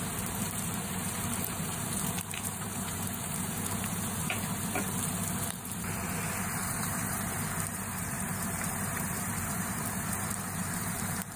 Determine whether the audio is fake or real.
fake